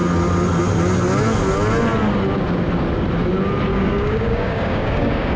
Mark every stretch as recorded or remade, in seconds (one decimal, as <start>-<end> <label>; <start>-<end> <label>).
0.0-3.7 recorded; 3.7-5.4 remade